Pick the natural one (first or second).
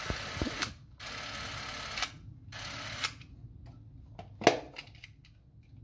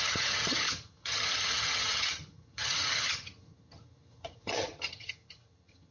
first